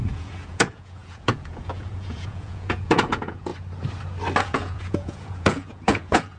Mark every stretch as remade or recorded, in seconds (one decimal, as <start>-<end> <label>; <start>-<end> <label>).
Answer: 0.0-3.5 remade; 3.5-4.4 recorded; 4.4-6.4 remade